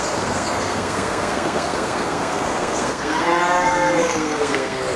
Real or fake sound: fake